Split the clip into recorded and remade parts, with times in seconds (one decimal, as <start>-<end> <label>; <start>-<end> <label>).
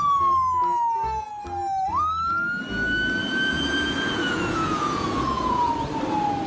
0.0-3.2 recorded; 3.2-5.7 remade; 5.7-6.5 recorded